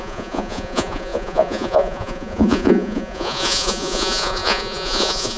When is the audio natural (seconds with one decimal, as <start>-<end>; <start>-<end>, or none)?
none